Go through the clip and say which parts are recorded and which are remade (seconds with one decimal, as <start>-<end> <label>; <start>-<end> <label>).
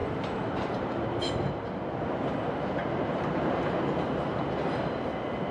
0.0-1.5 remade; 1.5-2.8 recorded; 2.8-4.5 remade; 4.5-5.5 recorded